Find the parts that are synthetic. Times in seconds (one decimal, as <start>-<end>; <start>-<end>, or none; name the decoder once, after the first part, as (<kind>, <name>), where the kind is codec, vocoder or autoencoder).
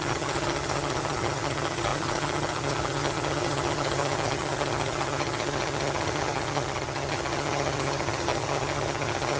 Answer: 0.0-9.4 (vocoder, HiFi-GAN)